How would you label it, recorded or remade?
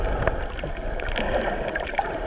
recorded